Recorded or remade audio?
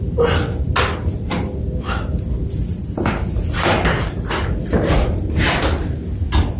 recorded